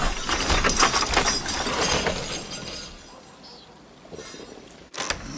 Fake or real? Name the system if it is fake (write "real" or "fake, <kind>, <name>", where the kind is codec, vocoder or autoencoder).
real